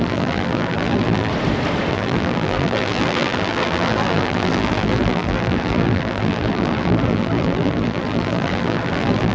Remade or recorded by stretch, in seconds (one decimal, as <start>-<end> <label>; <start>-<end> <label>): 0.0-1.3 remade; 1.3-1.9 recorded; 1.9-9.3 remade